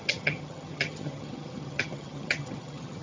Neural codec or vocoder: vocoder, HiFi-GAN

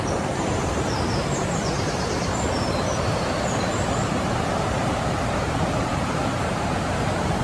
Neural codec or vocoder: vocoder, BigVGAN v2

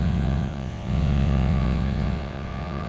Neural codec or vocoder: vocoder, WaveNeXt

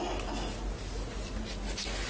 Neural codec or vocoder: none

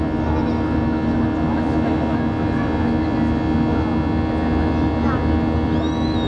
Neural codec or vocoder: none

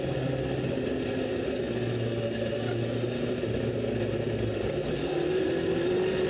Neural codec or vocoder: none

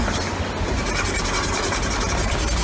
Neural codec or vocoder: none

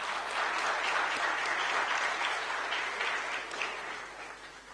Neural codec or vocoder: none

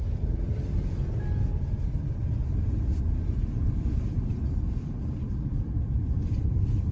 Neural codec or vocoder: vocoder, BigVGAN v2